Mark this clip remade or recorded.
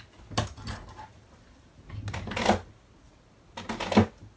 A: recorded